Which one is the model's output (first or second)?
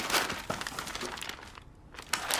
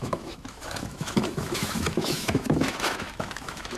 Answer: second